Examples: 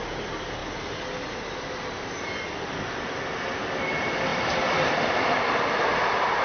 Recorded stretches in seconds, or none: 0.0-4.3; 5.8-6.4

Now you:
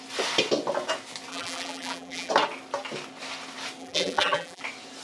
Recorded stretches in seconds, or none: 0.0-1.3; 2.3-3.8; 4.6-5.0

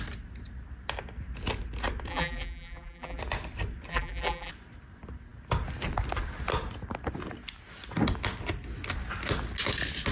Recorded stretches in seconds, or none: 0.0-2.1; 3.2-3.9; 4.5-10.1

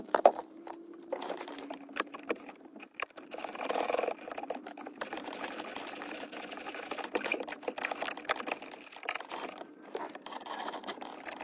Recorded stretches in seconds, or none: 7.3-9.2

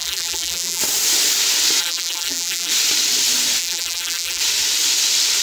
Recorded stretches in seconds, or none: 0.8-1.8; 2.7-3.6; 4.4-5.4